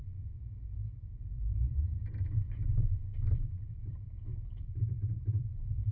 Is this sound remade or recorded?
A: remade